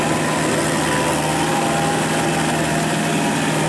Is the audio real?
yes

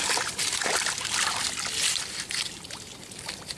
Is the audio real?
yes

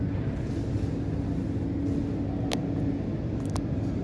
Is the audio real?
yes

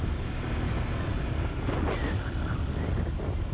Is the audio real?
yes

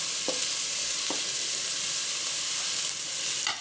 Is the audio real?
yes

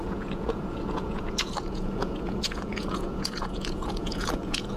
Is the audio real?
no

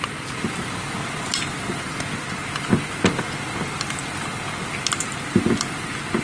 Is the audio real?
yes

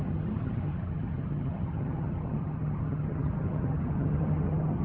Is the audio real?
no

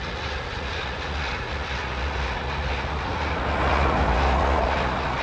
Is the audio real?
no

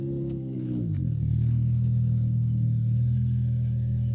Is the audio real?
no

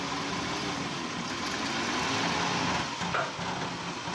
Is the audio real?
yes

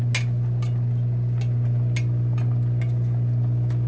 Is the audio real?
yes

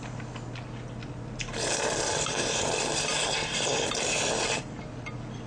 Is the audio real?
yes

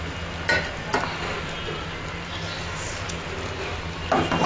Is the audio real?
yes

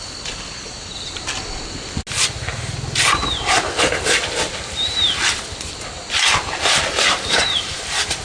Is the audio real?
yes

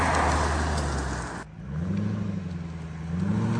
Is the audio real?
yes